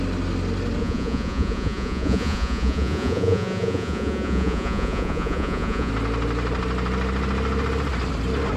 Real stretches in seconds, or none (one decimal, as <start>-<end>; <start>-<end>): 0.0-0.8; 5.9-8.6